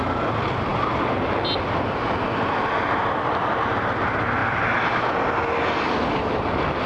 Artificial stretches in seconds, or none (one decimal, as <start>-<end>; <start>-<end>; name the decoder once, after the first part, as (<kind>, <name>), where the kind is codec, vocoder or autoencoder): none